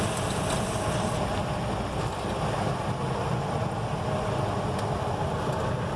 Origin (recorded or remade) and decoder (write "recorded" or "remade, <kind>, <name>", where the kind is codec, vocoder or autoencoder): recorded